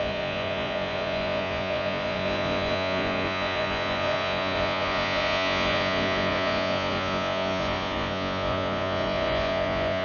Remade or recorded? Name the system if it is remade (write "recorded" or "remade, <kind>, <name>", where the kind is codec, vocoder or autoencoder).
remade, vocoder, Vocos